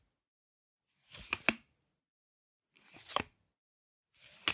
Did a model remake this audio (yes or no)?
no